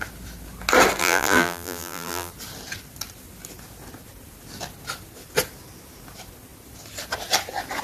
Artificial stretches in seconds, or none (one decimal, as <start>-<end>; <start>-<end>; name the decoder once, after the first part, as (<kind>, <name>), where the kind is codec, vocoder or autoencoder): 1.0-2.3 (vocoder, BigVGAN v2)

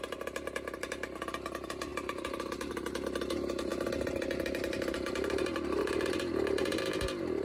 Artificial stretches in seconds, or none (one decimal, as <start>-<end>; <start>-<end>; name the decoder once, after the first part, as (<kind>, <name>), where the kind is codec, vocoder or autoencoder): none

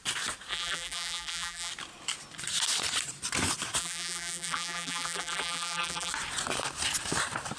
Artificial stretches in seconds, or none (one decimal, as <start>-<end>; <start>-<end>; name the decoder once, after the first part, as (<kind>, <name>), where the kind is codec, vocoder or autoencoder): 0.5-1.7 (vocoder, BigVGAN v2); 3.8-6.1

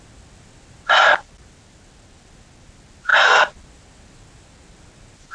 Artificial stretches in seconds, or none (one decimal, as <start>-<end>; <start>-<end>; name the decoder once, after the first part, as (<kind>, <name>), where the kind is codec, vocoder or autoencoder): none

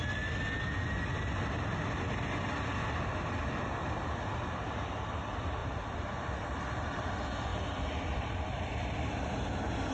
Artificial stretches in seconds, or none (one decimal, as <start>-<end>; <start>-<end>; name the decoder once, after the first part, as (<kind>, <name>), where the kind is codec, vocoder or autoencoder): 5.6-7.1 (vocoder, BigVGAN v2); 7.5-8.6

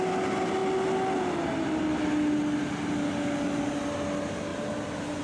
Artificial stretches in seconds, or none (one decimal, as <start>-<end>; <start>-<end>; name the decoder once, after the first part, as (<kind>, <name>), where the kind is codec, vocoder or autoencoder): none

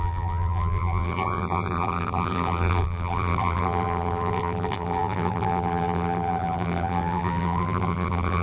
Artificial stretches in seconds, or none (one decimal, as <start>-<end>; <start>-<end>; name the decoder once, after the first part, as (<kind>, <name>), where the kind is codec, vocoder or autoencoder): 0.0-8.4 (vocoder, BigVGAN v2)